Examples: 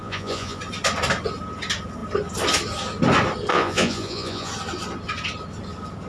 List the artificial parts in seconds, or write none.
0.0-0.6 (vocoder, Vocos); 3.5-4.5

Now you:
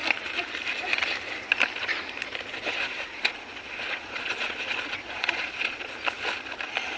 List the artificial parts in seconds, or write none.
2.5-5.9 (vocoder, Vocos)

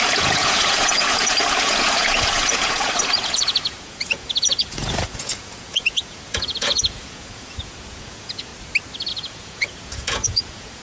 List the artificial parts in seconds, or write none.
0.0-8.5 (vocoder, Vocos); 9.1-10.8

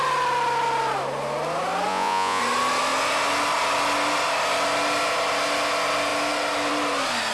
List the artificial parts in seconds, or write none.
1.9-2.4 (vocoder, Vocos)

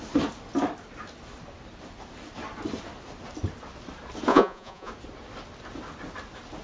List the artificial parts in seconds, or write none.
4.3-4.9 (vocoder, Vocos)

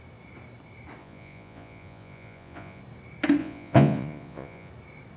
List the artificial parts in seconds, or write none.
1.0-2.8 (vocoder, Vocos); 3.4-4.7

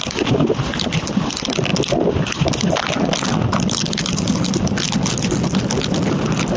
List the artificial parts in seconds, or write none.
none